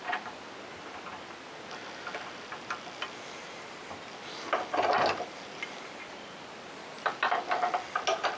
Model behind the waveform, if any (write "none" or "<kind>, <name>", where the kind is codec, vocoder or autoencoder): none